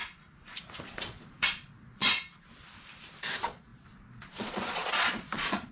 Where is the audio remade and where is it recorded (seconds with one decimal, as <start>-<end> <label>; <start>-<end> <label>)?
0.0-0.8 recorded; 0.8-2.1 remade; 2.1-3.3 recorded; 3.3-5.7 remade